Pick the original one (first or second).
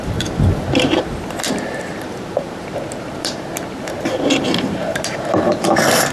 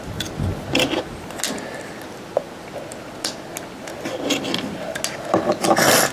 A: second